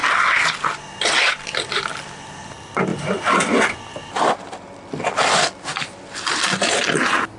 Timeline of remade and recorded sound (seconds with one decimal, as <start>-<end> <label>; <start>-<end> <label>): 0.0-2.9 recorded; 2.9-3.7 remade; 3.7-7.4 recorded